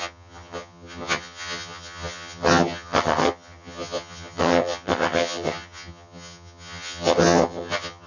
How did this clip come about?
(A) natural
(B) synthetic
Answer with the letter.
B